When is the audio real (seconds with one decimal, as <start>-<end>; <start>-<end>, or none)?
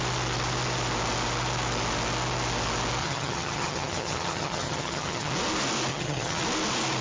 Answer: 0.0-3.0; 5.3-5.9; 6.4-7.0